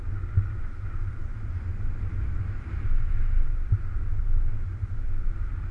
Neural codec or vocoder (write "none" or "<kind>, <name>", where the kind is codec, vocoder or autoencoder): none